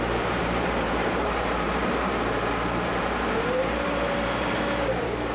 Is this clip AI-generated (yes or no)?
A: yes